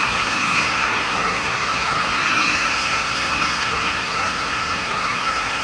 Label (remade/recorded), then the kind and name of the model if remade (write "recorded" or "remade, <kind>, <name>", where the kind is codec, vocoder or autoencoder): remade, codec, SNAC